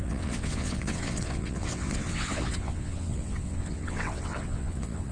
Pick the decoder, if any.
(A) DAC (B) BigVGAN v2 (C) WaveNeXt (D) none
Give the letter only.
C